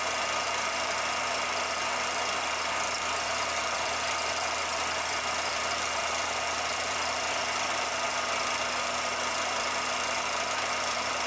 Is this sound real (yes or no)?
no